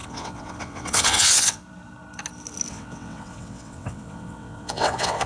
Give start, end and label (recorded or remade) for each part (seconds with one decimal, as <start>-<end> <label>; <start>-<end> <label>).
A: 0.0-1.6 remade; 1.6-2.7 recorded; 2.7-5.3 remade